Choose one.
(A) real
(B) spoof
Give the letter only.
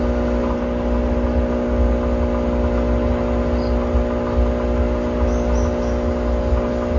A